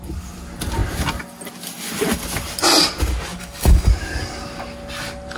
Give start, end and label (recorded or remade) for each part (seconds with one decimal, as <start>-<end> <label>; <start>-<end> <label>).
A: 0.0-3.3 recorded; 3.3-3.9 remade; 3.9-5.4 recorded